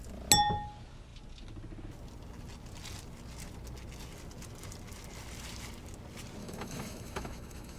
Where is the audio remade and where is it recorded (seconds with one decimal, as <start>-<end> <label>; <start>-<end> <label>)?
0.0-6.4 recorded; 6.4-7.8 remade